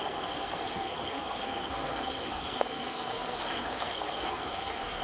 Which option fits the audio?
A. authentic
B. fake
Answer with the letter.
B